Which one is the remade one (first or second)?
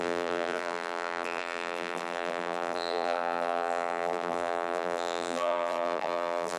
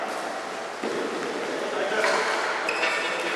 first